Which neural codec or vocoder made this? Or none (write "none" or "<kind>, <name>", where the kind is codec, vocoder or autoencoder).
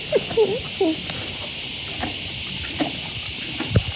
none